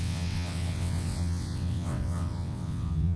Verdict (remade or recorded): remade